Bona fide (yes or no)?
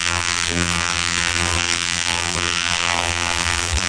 no